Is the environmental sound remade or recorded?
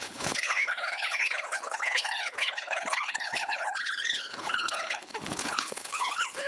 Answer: remade